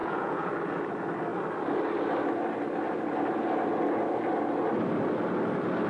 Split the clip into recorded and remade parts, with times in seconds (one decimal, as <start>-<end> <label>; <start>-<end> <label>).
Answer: 0.0-0.5 remade; 0.5-5.9 recorded